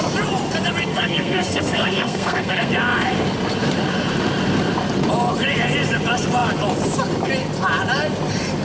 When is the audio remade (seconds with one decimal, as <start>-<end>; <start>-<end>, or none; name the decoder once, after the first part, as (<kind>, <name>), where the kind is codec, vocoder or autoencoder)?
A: 0.9-2.7 (codec, SNAC)